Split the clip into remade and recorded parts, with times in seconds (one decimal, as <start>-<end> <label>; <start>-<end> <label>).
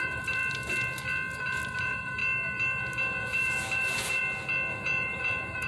0.0-0.4 remade; 0.4-1.8 recorded; 1.8-2.2 remade; 2.2-3.2 recorded; 3.2-4.2 remade; 4.2-4.7 recorded; 4.7-5.7 remade